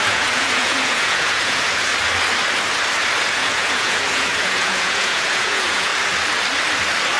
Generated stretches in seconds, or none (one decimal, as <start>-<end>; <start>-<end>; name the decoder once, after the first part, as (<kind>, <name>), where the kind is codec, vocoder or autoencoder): 0.0-1.9 (vocoder, Vocos); 3.2-5.9